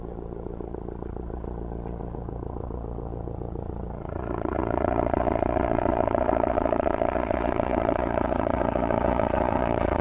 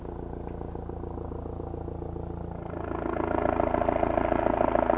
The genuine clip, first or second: second